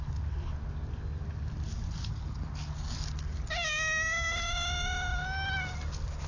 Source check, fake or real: real